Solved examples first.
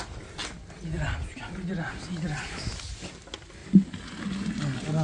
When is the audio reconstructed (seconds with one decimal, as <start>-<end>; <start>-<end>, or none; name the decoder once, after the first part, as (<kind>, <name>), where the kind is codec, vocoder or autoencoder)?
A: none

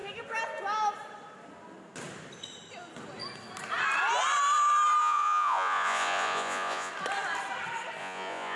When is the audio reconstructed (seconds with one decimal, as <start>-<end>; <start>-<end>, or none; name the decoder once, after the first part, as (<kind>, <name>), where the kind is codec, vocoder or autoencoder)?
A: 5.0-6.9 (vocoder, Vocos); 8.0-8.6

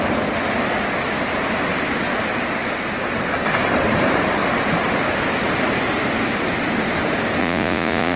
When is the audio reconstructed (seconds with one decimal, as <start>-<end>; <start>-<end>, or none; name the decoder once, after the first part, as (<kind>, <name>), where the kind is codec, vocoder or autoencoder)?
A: 7.4-8.2 (vocoder, Vocos)